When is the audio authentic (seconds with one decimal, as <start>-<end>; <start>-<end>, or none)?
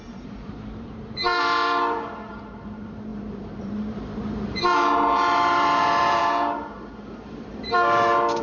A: none